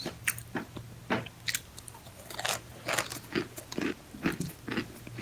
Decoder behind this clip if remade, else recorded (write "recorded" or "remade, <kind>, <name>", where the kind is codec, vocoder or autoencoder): recorded